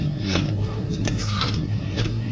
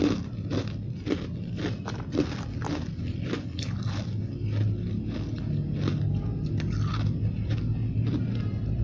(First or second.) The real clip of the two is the second